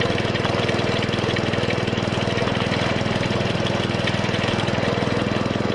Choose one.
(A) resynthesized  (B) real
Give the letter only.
B